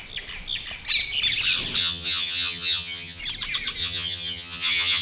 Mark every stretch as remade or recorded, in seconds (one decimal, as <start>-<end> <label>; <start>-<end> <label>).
0.0-1.8 recorded; 1.8-3.2 remade; 3.2-3.8 recorded; 3.8-5.0 remade